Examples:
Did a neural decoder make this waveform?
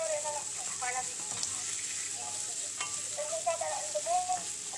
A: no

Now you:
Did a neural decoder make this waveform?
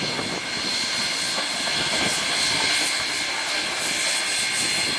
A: no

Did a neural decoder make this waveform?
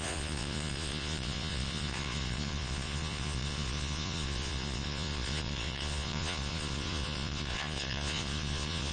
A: yes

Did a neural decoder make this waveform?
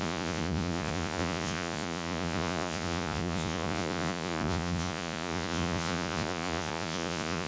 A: yes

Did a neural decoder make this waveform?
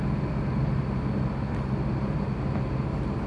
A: no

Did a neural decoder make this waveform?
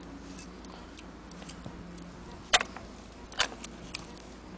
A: no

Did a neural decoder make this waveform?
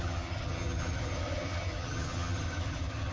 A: yes